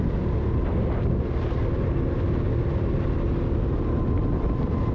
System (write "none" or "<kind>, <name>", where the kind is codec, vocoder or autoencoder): none